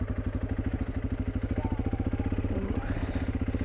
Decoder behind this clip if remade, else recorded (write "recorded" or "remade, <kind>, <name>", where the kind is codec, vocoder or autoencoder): recorded